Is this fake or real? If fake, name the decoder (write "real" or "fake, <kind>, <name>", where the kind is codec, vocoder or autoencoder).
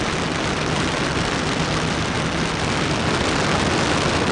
real